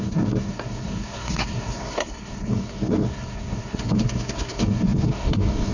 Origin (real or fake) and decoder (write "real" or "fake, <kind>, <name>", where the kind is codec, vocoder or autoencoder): fake, codec, SNAC